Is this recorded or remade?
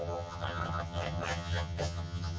remade